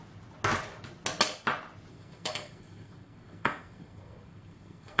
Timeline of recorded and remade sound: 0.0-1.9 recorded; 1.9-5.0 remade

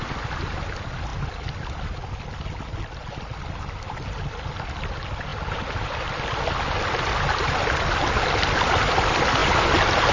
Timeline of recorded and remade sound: 0.0-10.1 recorded

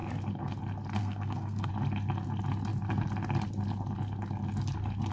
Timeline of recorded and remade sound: 0.0-1.0 recorded; 1.0-1.7 remade; 1.7-5.1 recorded

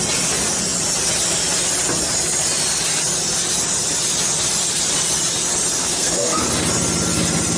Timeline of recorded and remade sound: 0.0-5.8 recorded; 5.8-6.4 remade; 6.4-7.6 recorded

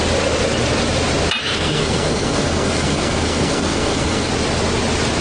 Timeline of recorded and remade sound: 0.0-1.4 recorded; 1.4-4.3 remade; 4.3-5.2 recorded

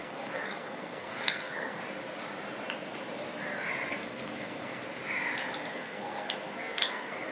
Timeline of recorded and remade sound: 0.0-1.8 remade; 1.8-3.9 recorded; 3.9-4.8 remade; 4.8-5.7 recorded; 5.7-7.3 remade

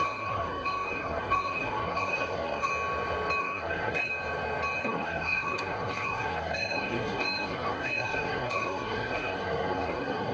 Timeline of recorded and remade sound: 0.0-2.7 remade; 2.7-3.4 recorded; 3.4-4.1 remade; 4.1-4.8 recorded; 4.8-10.3 remade

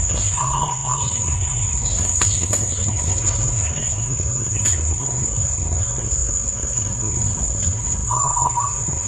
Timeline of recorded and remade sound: 0.0-9.1 remade